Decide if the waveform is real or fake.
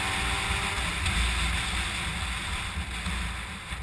real